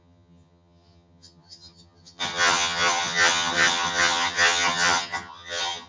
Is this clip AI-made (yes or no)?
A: yes